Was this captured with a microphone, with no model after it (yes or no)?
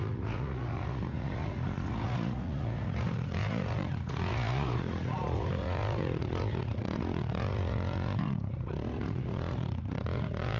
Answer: no